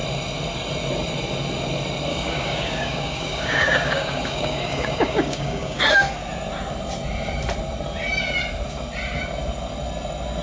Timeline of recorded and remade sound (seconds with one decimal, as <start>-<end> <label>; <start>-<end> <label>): 0.0-2.1 recorded; 2.1-5.8 remade; 5.8-10.4 recorded